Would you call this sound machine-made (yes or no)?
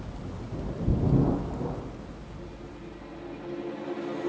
no